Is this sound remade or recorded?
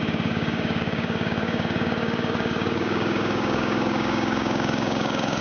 remade